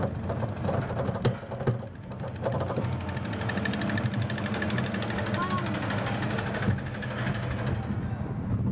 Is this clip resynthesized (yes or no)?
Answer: no